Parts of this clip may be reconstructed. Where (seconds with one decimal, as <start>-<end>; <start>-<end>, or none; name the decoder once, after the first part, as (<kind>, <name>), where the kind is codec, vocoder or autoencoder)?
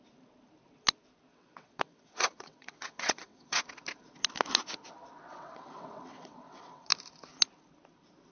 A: 1.3-3.6 (vocoder, WaveNeXt); 5.3-6.9